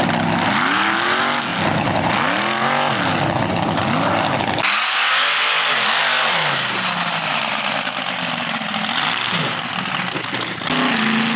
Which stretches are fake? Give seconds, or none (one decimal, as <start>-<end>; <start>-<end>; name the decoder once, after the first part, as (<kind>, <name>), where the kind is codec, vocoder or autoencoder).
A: none